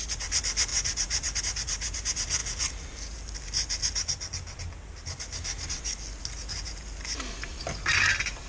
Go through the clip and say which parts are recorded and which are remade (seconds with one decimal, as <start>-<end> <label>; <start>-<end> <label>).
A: 0.0-8.5 recorded